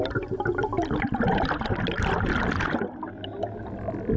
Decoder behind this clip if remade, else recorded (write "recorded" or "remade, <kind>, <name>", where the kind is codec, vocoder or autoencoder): recorded